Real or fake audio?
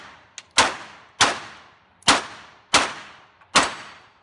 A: real